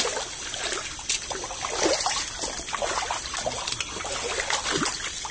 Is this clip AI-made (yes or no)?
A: no